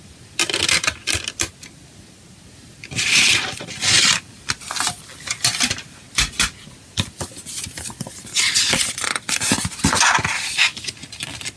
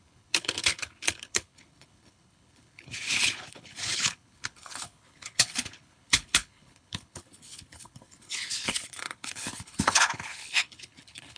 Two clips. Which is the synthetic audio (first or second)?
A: second